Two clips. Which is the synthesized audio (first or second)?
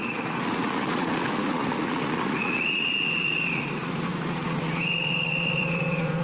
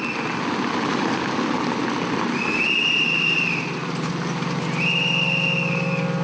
first